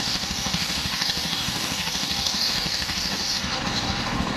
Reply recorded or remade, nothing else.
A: remade